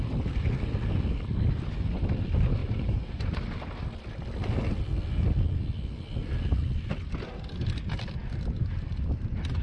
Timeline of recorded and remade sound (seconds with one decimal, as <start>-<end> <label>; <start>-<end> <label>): 0.0-2.6 recorded; 2.6-3.3 remade; 3.3-9.6 recorded